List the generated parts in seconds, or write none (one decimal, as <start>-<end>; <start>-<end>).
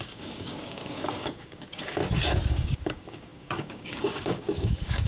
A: 0.0-2.0; 2.5-5.1